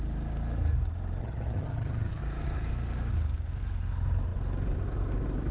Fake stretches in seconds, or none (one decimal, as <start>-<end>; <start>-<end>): 1.2-2.2